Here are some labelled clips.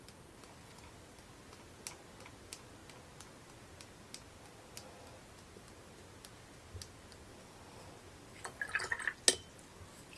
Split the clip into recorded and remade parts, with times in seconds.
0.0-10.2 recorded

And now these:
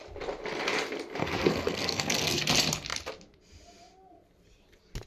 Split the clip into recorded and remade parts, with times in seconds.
0.0-1.2 recorded; 1.2-2.4 remade; 2.4-5.1 recorded

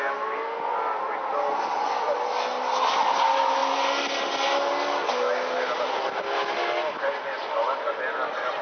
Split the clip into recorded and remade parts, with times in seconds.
0.0-8.6 recorded

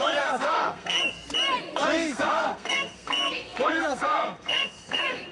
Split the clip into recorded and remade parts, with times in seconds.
0.0-1.0 remade; 1.0-1.6 recorded; 1.6-5.3 remade